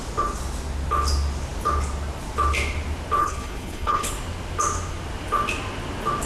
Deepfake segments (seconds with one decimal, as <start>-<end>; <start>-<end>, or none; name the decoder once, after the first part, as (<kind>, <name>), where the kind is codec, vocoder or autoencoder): 3.2-4.1 (codec, HILCodec)